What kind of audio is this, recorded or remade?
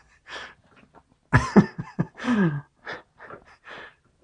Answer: recorded